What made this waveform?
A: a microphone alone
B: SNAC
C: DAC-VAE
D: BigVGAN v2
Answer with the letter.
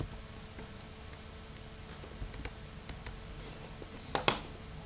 A